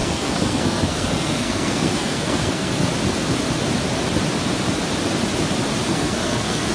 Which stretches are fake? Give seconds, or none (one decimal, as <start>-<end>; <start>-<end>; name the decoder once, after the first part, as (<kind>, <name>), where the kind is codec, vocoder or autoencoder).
0.0-2.9 (codec, SNAC); 5.9-6.7